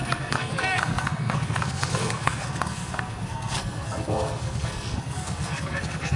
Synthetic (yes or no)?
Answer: yes